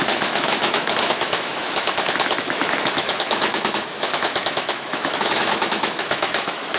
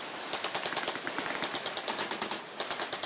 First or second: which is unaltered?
second